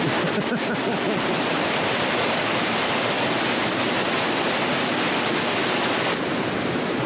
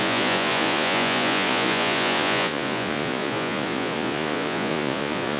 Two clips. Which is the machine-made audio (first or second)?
second